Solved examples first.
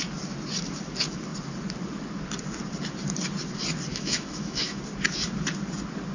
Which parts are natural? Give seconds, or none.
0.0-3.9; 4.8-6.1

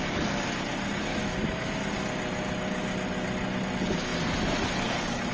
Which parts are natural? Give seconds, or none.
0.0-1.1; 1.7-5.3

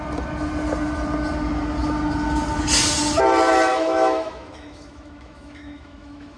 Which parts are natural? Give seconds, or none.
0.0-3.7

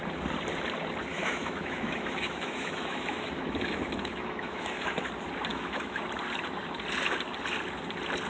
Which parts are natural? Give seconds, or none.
0.0-1.1; 5.1-5.5; 6.0-8.3

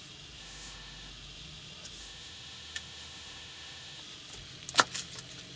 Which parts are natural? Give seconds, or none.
0.0-0.4; 1.1-2.0; 4.0-5.6

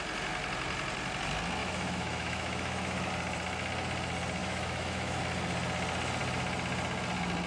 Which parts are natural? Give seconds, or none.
0.0-1.6; 3.1-4.4; 5.2-7.5